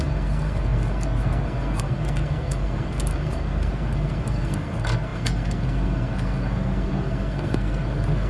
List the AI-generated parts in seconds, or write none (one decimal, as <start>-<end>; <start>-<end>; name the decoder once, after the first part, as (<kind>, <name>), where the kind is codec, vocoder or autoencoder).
0.0-8.3 (codec, SNAC)